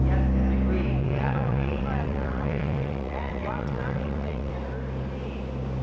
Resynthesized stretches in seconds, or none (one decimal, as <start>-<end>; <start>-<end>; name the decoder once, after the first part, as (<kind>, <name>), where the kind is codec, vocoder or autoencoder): 1.0-4.5 (vocoder, WaveNeXt)